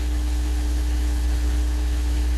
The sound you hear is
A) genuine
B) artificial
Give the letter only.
B